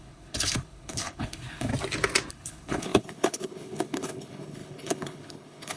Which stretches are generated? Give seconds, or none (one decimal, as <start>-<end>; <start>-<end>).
0.0-1.7; 2.3-5.8